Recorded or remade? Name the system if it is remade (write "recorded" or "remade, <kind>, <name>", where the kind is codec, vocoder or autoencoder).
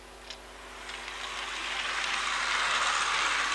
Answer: recorded